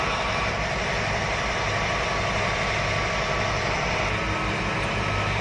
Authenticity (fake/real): real